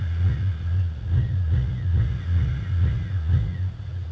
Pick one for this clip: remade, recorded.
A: remade